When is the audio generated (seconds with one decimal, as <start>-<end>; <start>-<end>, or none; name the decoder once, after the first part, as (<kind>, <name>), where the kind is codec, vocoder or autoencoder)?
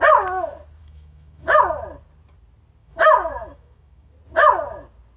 0.8-1.6 (autoencoder, DAC-VAE); 2.8-4.1